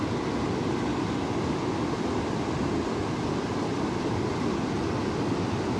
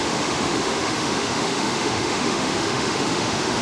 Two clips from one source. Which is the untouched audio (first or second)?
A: first